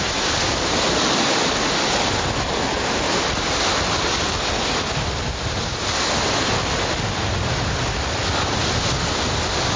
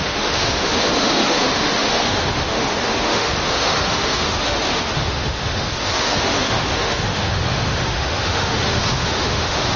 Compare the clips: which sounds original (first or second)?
first